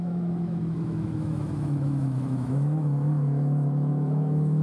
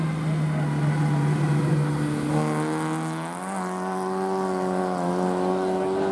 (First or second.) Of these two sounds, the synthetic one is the first